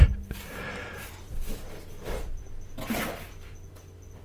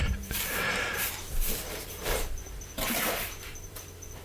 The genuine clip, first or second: first